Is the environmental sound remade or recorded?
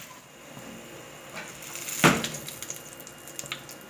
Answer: recorded